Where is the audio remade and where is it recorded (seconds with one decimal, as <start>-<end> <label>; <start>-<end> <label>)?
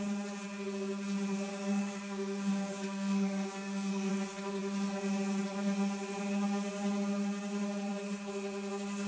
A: 0.0-1.5 recorded; 1.5-4.1 remade; 4.1-9.1 recorded